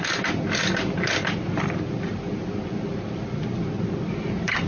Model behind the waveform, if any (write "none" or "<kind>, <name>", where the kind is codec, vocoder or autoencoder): none